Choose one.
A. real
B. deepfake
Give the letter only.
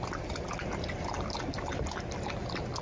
A